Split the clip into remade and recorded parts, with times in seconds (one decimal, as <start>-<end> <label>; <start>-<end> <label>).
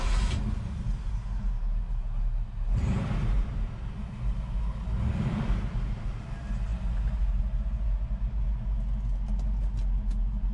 0.0-10.5 recorded